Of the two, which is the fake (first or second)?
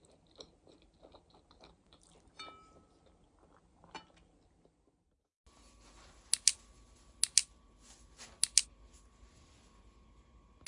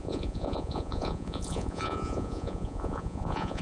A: second